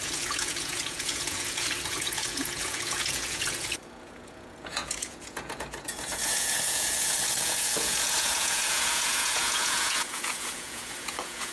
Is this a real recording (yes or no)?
no